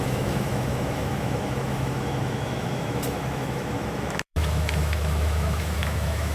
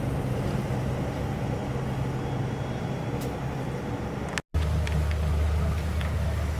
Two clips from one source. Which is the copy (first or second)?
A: first